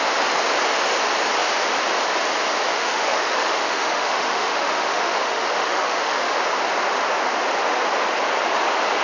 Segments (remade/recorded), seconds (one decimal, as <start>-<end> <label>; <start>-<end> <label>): 0.0-2.7 recorded; 2.7-6.3 remade; 6.3-9.0 recorded